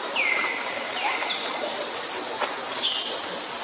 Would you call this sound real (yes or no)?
yes